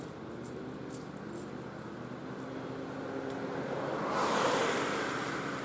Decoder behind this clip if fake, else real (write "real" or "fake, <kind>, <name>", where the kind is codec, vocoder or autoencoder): real